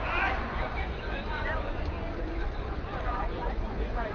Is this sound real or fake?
fake